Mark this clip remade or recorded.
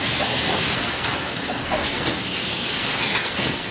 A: remade